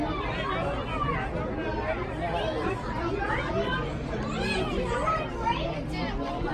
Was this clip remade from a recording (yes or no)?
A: no